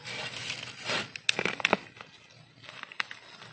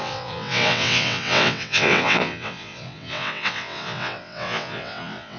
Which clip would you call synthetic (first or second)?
second